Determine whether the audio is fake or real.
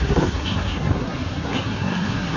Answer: fake